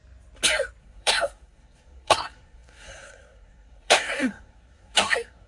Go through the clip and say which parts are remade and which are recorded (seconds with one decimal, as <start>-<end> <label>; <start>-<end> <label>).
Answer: 0.0-0.8 recorded; 0.8-5.5 remade